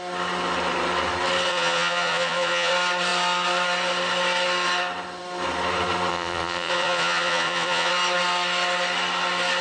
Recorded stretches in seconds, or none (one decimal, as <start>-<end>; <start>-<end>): 0.0-1.5; 2.7-6.1; 7.9-9.6